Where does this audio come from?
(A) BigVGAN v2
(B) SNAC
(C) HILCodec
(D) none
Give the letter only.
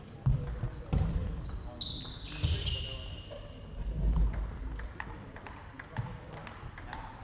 D